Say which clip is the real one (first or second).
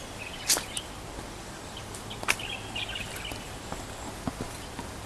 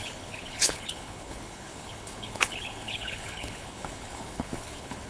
first